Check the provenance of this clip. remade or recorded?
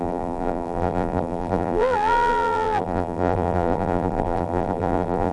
remade